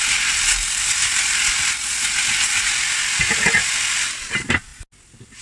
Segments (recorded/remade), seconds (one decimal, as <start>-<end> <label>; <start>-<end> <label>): 0.0-5.4 recorded